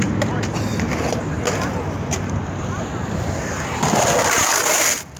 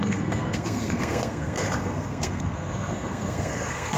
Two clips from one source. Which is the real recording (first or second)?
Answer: first